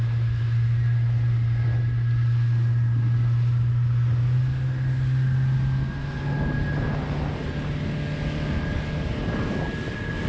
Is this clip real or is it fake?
real